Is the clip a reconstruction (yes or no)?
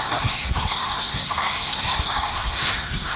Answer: yes